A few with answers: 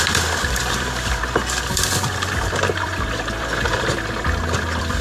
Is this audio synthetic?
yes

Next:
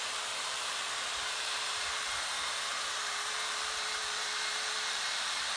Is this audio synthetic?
yes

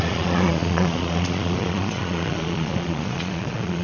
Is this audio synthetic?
yes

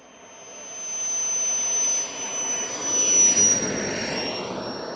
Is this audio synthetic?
no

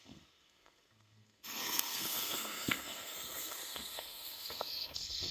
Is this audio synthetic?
yes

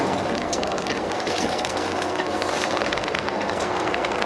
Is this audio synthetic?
yes